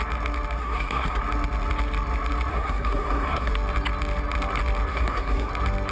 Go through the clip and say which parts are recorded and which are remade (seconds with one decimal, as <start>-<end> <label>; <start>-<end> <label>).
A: 0.0-0.6 recorded; 0.6-1.2 remade; 1.2-2.5 recorded; 2.5-3.5 remade; 3.5-4.9 recorded; 4.9-5.5 remade; 5.5-5.9 recorded